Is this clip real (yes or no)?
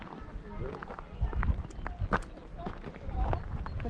yes